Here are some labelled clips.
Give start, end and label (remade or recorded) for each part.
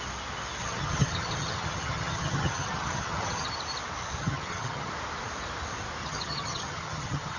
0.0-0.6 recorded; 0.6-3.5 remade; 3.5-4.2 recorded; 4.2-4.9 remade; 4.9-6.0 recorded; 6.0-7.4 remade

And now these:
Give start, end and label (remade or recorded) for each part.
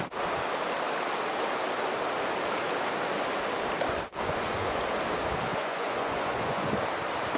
0.0-4.1 recorded; 4.1-4.8 remade; 4.8-5.5 recorded; 5.5-6.7 remade; 6.7-7.4 recorded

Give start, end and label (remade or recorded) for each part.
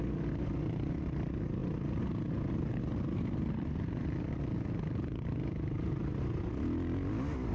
0.0-7.5 recorded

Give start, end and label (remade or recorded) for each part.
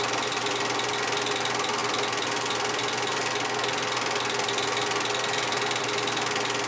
0.0-6.7 recorded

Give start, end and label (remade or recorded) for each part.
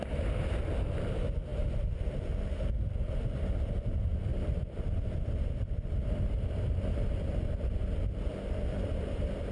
0.0-1.5 recorded; 1.5-2.2 remade; 2.2-4.3 recorded; 4.3-9.5 remade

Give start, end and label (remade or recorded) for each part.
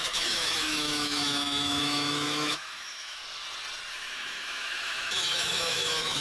0.0-3.2 remade; 3.2-3.9 recorded; 3.9-6.2 remade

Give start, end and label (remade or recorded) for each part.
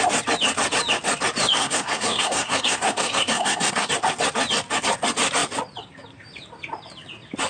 0.0-1.6 recorded; 1.6-3.9 remade; 3.9-7.5 recorded